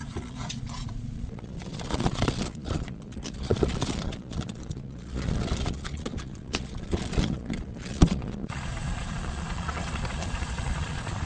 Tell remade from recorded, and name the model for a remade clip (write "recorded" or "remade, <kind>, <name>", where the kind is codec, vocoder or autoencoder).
remade, vocoder, Vocos